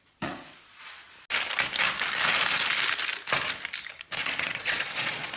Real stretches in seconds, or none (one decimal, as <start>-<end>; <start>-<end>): 1.0-4.2